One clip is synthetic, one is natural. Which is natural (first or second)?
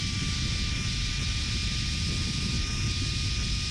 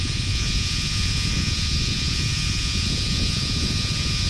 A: first